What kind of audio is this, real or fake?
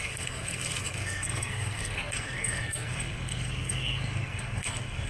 fake